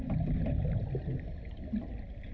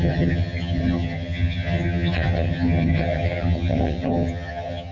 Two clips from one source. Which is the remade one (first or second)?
second